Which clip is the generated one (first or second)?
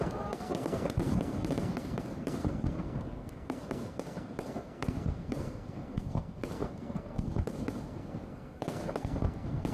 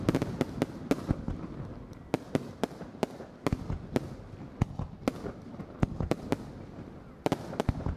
first